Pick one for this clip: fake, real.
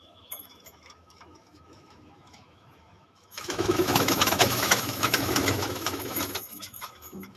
fake